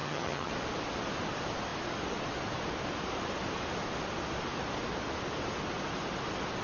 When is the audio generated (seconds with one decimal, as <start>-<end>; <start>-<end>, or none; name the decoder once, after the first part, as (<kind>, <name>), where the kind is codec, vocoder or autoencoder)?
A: 0.0-0.5 (vocoder, HiFi-GAN)